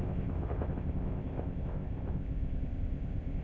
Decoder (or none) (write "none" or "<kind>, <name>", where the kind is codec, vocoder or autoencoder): codec, ZipCodec